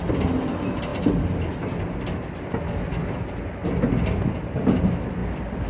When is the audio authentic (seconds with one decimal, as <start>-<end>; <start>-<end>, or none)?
0.0-5.7